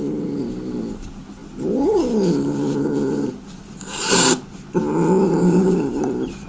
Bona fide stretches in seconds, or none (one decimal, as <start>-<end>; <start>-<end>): 0.0-5.4; 6.0-6.5